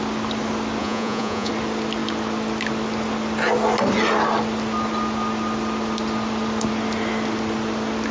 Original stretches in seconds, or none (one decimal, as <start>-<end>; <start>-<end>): 0.0-0.8; 1.5-8.1